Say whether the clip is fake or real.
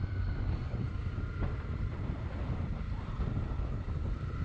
fake